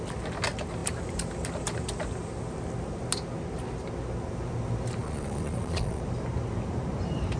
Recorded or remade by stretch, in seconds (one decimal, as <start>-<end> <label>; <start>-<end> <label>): 0.0-5.0 recorded; 5.0-6.0 remade; 6.0-7.4 recorded